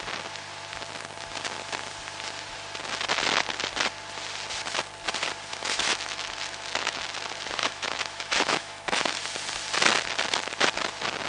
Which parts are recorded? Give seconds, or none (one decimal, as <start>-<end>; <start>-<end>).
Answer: 0.0-5.5; 7.0-7.6; 9.2-11.3